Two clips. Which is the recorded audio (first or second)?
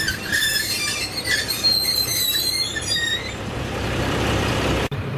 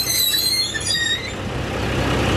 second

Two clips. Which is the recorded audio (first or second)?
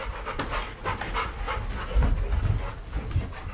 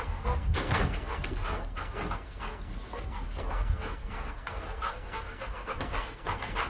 first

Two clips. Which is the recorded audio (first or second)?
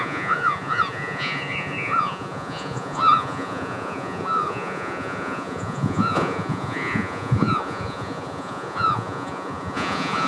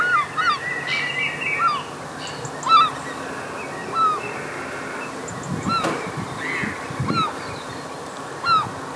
second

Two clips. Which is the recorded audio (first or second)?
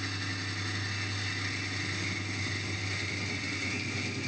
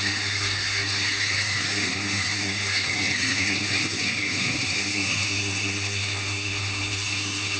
first